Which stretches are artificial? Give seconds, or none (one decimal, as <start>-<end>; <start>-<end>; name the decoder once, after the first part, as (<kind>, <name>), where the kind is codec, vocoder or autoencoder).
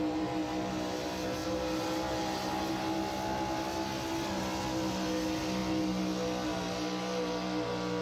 none